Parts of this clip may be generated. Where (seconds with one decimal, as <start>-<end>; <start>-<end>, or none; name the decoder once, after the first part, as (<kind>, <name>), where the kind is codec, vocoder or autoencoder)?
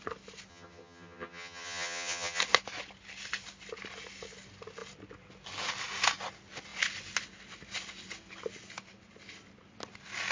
0.5-2.4 (vocoder, HiFi-GAN)